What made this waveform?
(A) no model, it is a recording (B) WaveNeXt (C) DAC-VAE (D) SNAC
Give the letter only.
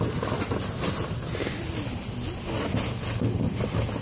A